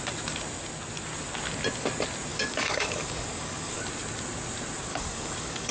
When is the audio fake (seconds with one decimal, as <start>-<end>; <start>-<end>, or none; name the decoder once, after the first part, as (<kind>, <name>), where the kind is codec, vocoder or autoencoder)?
2.3-3.8 (codec, DAC); 4.9-5.7